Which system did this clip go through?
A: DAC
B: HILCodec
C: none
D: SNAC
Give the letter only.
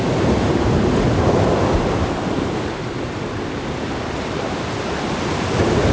C